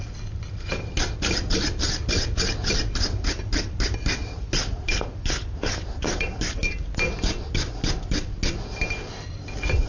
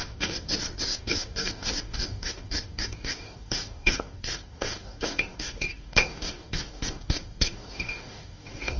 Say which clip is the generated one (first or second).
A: second